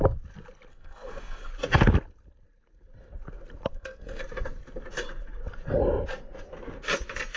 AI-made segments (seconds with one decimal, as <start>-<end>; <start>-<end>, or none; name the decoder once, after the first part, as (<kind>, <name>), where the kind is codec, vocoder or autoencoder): 0.7-1.5 (codec, SNAC); 3.7-4.2